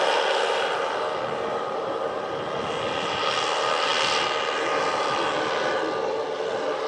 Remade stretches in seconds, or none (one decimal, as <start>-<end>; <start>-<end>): none